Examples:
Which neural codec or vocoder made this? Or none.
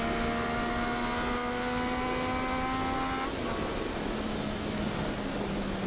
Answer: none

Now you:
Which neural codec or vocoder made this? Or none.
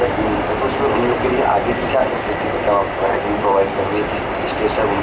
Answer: none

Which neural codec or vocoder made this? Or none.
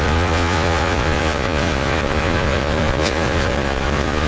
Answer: vocoder, Vocos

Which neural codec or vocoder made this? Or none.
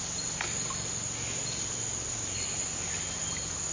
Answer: none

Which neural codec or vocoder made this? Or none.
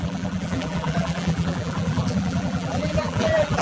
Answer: vocoder, BigVGAN v2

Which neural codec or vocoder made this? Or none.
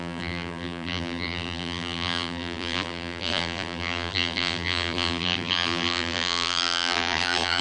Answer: vocoder, BigVGAN v2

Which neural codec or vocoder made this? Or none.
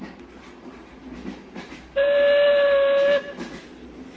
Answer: none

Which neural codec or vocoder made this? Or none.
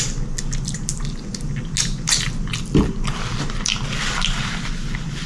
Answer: none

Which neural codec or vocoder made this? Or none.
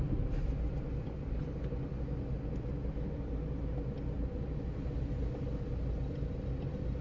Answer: none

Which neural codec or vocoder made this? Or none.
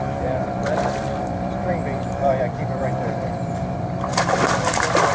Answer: none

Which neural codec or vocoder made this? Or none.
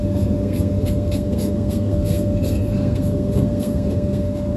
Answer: codec, SNAC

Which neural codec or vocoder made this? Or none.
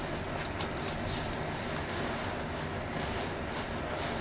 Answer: none